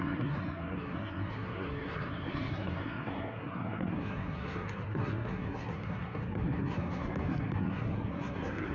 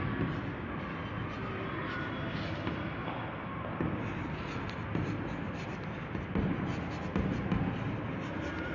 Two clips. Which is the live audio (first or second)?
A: second